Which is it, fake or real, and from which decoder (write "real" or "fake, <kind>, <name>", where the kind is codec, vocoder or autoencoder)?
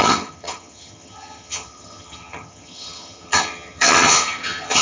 fake, vocoder, HiFi-GAN